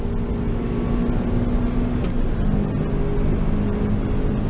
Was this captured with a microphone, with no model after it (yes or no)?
yes